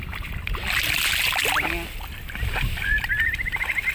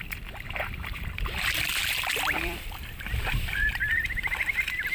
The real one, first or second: first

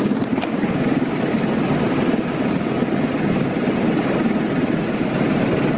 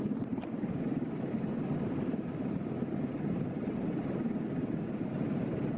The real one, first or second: first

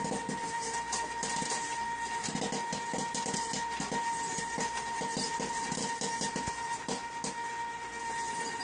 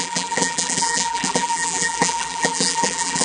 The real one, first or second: first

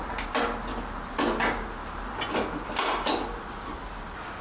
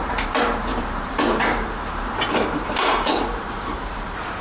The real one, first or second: first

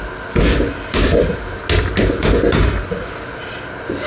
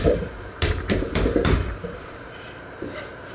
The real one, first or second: first